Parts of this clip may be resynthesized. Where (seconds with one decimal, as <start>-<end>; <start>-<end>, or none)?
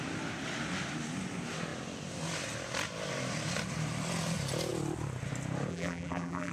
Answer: 5.7-6.5